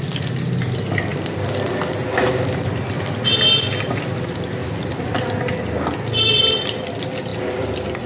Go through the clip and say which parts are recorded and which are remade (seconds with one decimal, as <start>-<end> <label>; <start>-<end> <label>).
0.0-8.1 recorded